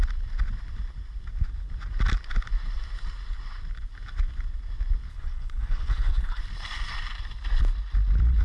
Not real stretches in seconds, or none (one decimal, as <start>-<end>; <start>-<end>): 5.1-6.4